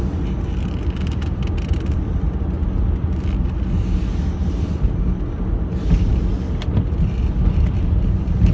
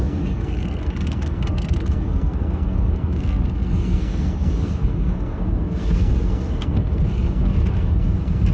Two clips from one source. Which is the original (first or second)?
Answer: first